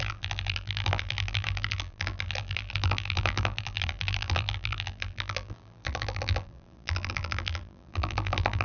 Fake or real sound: fake